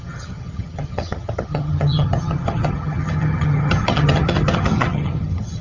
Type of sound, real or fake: fake